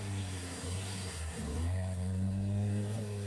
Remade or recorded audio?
remade